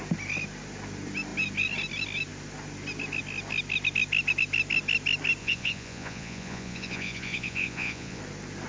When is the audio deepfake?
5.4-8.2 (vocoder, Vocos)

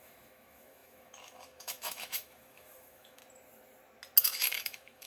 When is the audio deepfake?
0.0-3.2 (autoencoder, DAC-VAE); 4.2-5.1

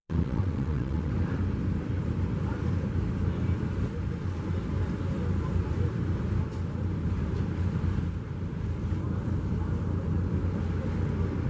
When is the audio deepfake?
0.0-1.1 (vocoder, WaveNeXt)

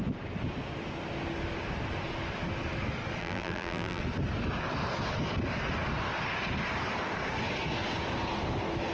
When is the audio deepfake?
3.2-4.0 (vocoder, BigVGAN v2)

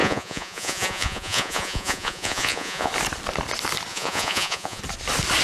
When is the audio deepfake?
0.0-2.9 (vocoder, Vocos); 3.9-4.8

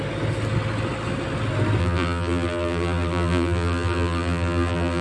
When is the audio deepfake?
1.8-5.0 (vocoder, BigVGAN v2)

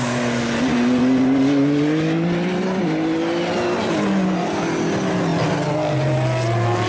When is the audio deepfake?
none

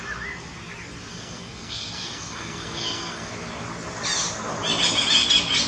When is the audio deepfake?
1.1-3.3 (codec, SNAC)